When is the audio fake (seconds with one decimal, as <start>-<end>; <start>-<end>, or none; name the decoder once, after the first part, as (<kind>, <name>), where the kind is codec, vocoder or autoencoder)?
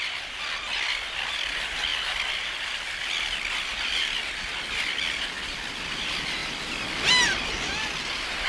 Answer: 1.9-2.5 (vocoder, BigVGAN v2); 3.7-4.4